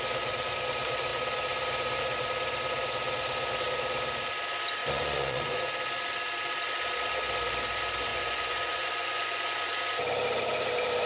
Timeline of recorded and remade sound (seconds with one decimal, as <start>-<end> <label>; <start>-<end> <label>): 0.0-4.8 recorded; 4.8-5.6 remade; 5.6-8.1 recorded; 8.1-9.7 remade; 9.7-11.1 recorded